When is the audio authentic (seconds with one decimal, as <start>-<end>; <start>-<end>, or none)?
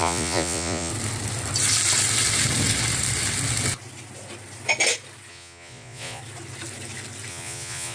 0.9-5.3; 6.2-7.3